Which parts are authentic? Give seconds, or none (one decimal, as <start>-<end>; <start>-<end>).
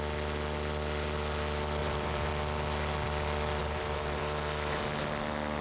0.0-1.8; 2.3-3.6; 4.2-5.6